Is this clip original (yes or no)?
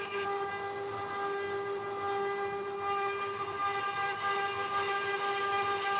yes